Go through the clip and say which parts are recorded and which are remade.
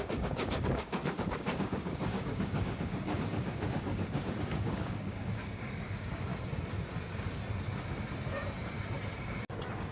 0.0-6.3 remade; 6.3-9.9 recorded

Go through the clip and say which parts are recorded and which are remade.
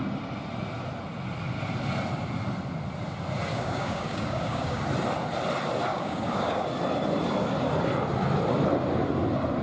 0.0-3.5 recorded; 3.5-4.8 remade; 4.8-5.9 recorded; 5.9-6.7 remade; 6.7-9.6 recorded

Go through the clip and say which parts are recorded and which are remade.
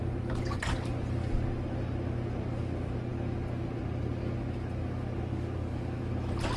0.0-5.3 recorded; 5.3-6.0 remade; 6.0-6.6 recorded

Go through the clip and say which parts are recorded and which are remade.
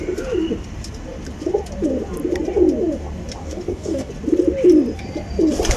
0.0-3.4 recorded; 3.4-4.1 remade; 4.1-5.8 recorded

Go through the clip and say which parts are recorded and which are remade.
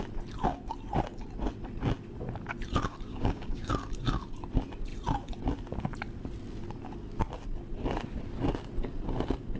0.0-3.1 recorded; 3.1-3.7 remade; 3.7-9.6 recorded